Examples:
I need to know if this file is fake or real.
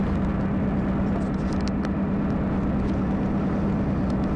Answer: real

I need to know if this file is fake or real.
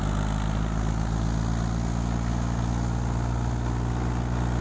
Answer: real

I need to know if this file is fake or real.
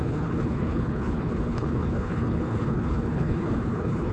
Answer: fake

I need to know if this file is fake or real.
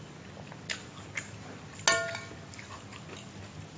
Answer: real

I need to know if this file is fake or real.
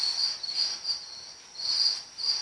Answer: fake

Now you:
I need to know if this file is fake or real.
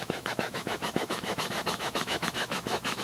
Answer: fake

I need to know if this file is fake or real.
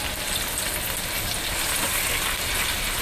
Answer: real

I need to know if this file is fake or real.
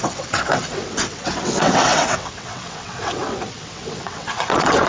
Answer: fake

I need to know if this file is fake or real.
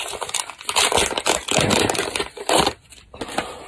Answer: real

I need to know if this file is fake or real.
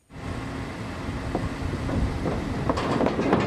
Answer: real